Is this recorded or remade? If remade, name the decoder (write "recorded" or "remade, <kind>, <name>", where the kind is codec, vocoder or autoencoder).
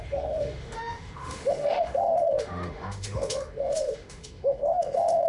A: remade, autoencoder, DAC-VAE